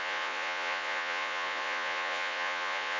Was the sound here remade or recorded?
remade